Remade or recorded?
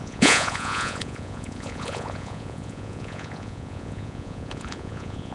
remade